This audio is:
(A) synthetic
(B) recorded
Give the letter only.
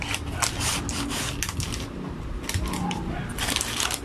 B